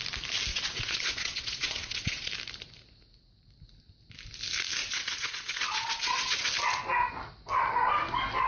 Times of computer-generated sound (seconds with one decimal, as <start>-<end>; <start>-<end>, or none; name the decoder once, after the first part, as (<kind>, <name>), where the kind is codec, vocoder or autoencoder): 0.5-2.3 (vocoder, WaveNeXt); 4.8-6.5